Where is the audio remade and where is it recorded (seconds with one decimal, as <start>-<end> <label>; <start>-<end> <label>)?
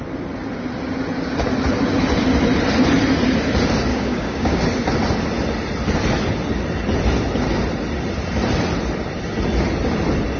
0.0-3.9 recorded; 3.9-4.6 remade; 4.6-10.4 recorded